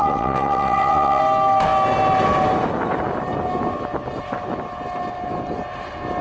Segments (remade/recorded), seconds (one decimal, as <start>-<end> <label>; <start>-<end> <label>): 0.0-1.2 remade; 1.2-6.2 recorded